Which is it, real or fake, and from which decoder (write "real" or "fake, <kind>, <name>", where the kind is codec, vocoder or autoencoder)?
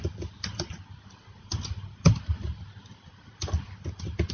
real